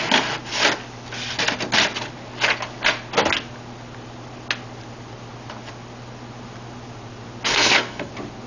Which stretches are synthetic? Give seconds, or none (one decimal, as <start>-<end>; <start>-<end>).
7.5-8.1